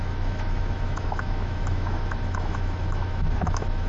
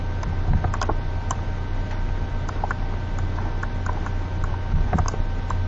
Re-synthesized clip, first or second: first